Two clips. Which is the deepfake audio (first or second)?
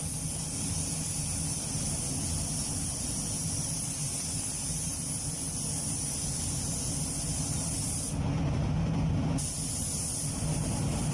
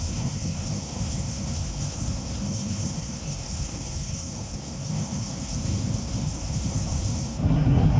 second